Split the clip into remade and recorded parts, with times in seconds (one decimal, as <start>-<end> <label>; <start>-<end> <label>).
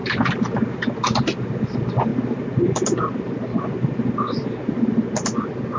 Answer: 0.0-5.8 recorded